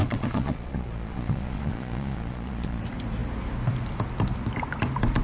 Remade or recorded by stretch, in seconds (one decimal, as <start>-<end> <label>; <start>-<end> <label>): 0.0-2.8 remade; 2.8-5.2 recorded